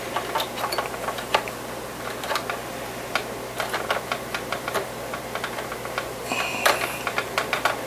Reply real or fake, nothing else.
real